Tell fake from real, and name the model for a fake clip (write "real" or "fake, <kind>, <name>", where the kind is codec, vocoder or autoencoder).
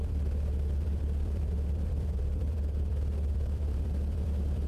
fake, vocoder, BigVGAN v2